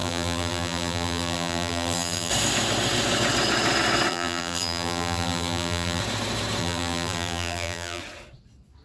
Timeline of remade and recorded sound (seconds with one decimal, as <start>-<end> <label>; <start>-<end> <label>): 0.0-2.3 remade; 2.3-4.1 recorded; 4.1-6.0 remade; 6.0-6.6 recorded; 6.6-8.0 remade; 8.0-8.8 recorded